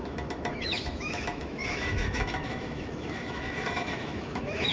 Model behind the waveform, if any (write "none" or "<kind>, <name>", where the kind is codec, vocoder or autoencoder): autoencoder, DAC-VAE